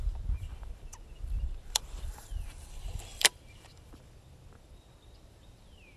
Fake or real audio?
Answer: fake